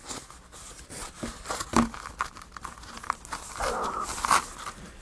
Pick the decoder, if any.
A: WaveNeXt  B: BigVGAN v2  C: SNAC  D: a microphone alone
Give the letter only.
D